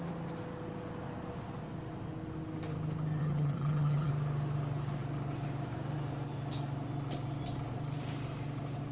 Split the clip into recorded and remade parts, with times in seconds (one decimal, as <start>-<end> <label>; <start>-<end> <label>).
0.0-3.2 recorded; 3.2-4.1 remade; 4.1-8.9 recorded